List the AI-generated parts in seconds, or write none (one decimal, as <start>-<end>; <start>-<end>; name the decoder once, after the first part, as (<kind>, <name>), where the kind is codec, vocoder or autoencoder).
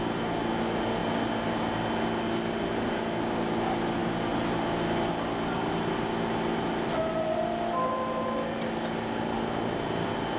none